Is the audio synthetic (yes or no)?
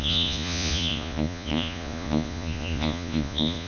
yes